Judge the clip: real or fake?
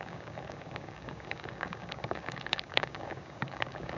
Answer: fake